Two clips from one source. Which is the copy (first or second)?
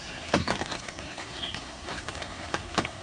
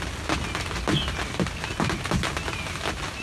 first